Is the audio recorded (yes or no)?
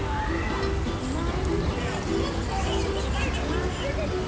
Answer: yes